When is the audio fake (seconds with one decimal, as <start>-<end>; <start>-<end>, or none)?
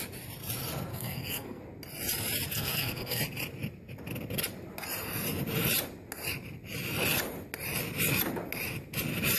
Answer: 0.9-1.6; 2.5-3.2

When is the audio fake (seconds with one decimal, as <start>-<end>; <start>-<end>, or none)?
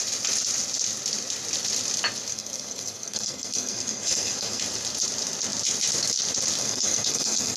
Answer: 2.3-4.6; 6.6-7.6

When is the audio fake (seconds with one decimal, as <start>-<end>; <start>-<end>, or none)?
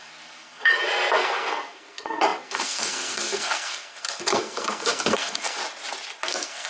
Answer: 0.0-0.7; 1.2-5.6; 6.2-6.7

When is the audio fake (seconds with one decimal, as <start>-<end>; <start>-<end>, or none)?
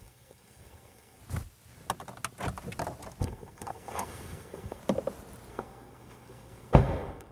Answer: 0.0-1.2; 3.2-4.8; 5.5-7.3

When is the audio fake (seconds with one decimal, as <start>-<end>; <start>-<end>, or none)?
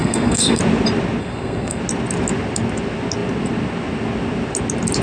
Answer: 0.0-0.6; 1.2-1.8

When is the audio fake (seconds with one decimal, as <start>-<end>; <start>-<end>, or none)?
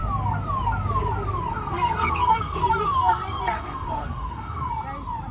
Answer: 1.5-4.7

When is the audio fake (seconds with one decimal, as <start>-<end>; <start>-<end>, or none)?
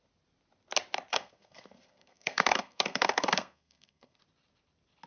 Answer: 1.1-4.2